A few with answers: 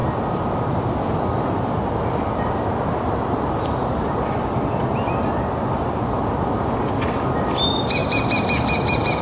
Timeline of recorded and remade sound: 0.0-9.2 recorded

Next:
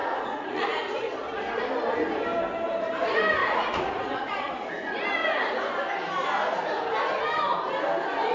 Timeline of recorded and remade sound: 0.0-1.0 remade; 1.0-3.4 recorded; 3.4-4.7 remade; 4.7-8.3 recorded

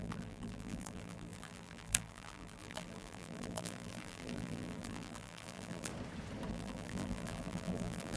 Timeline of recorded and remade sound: 0.0-5.9 remade; 5.9-6.5 recorded; 6.5-8.2 remade

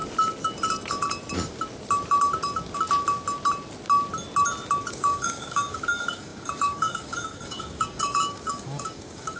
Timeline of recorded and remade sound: 0.0-4.9 recorded; 4.9-9.4 remade

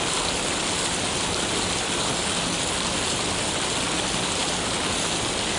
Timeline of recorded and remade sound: 0.0-5.6 recorded